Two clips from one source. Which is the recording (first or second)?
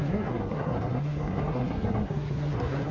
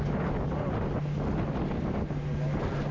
second